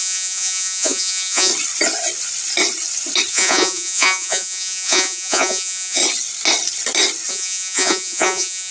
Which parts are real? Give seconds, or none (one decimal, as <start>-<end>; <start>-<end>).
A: 1.5-3.3; 6.0-7.3